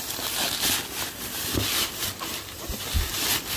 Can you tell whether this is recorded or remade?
recorded